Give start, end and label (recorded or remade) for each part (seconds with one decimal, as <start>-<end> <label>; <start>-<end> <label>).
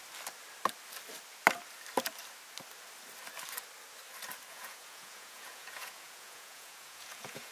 0.0-4.5 recorded; 4.5-7.5 remade